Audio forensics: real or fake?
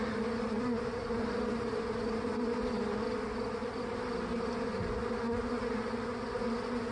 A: real